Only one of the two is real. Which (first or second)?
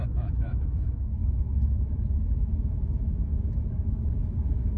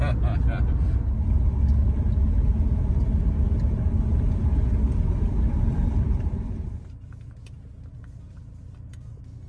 second